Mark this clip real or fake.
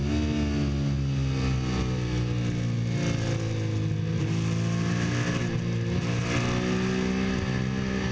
real